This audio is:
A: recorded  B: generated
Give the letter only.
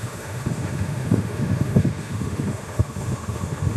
B